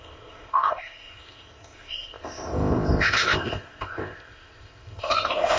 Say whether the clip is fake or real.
fake